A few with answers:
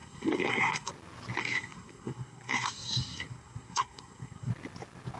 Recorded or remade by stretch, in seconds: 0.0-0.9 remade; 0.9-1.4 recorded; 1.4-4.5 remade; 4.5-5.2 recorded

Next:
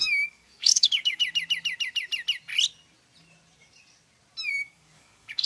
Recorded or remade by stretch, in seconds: 0.0-1.2 remade; 1.2-4.5 recorded; 4.5-5.5 remade